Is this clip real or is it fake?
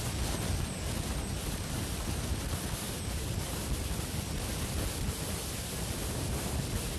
real